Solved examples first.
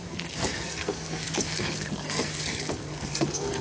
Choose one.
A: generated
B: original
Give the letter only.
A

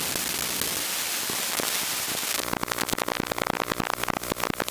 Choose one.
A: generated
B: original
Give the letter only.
B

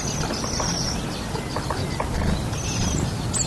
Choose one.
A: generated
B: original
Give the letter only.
B